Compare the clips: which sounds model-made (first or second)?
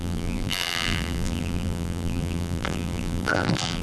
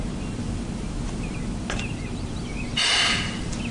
first